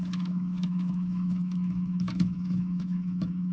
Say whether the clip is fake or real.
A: fake